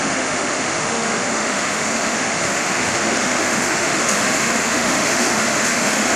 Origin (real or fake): fake